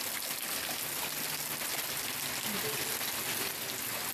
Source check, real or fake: real